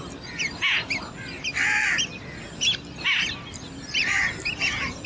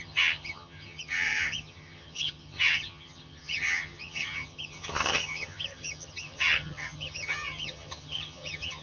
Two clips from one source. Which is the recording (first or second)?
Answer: first